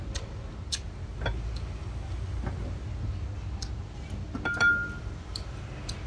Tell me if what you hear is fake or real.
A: real